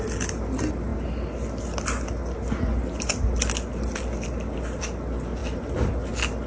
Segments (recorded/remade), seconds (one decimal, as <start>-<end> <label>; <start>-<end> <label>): 0.0-6.5 recorded